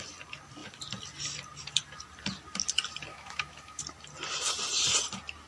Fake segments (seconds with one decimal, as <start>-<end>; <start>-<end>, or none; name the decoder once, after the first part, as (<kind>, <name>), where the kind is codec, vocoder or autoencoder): 3.1-3.8 (autoencoder, DAC-VAE)